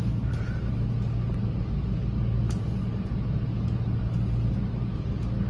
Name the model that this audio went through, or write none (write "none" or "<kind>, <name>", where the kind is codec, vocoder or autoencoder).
none